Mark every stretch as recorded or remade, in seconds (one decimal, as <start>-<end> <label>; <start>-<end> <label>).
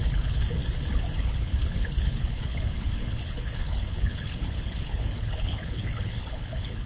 0.0-0.6 remade; 0.6-1.1 recorded; 1.1-6.9 remade